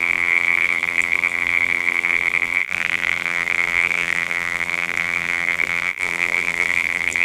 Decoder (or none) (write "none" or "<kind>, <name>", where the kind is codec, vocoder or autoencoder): vocoder, BigVGAN v2